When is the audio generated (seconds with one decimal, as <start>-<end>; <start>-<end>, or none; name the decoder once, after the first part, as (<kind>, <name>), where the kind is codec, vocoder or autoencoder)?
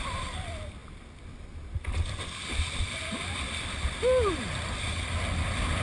none